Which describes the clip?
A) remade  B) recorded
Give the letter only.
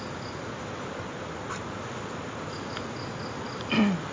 B